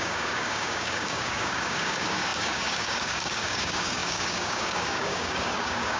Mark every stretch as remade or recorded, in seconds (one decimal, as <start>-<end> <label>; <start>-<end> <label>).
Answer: 0.0-6.0 remade